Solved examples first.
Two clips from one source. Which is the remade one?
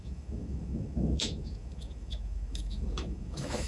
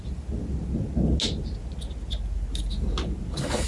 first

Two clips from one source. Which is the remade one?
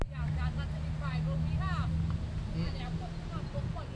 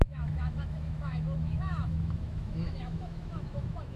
second